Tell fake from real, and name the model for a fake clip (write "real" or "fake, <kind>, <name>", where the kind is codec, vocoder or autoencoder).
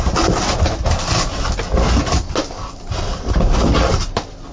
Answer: real